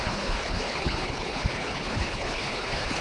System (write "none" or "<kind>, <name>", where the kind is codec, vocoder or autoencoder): codec, HILCodec